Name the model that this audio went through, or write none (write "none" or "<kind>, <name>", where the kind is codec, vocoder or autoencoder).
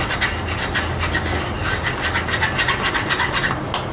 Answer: none